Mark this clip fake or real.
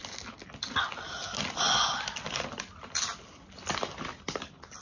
real